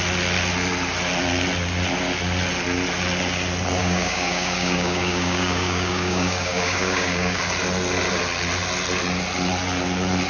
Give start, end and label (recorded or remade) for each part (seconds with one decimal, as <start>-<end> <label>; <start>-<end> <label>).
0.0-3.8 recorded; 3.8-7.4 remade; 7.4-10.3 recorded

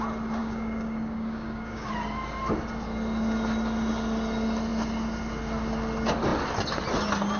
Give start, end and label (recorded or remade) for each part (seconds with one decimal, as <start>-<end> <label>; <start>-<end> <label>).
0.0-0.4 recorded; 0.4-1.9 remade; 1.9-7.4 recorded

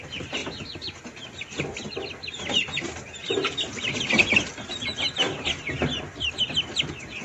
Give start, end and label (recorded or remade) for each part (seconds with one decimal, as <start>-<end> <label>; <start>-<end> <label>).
0.0-7.2 recorded

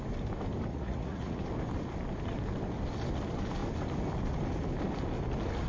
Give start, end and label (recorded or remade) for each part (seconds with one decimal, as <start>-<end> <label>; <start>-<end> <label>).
0.0-0.7 recorded; 0.7-1.4 remade; 1.4-5.7 recorded

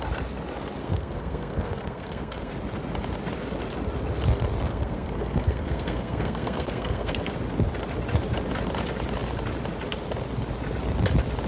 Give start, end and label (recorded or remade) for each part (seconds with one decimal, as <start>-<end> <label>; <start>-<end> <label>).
0.0-0.8 recorded; 0.8-2.5 remade; 2.5-4.7 recorded; 4.7-7.3 remade; 7.3-11.5 recorded

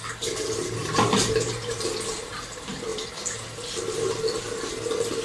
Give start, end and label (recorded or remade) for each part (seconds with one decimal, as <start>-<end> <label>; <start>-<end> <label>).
0.0-0.8 recorded; 0.8-1.8 remade; 1.8-5.2 recorded